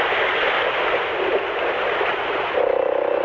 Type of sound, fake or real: real